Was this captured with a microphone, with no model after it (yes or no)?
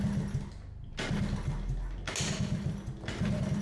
yes